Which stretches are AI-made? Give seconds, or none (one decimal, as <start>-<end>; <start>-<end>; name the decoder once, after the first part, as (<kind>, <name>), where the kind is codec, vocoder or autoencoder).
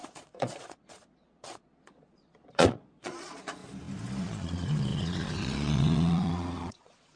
0.0-3.6 (vocoder, Vocos); 4.2-7.2